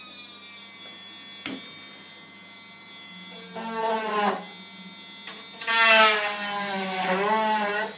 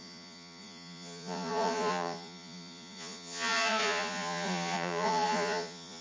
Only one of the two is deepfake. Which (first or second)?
second